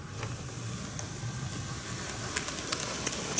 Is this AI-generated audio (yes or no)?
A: no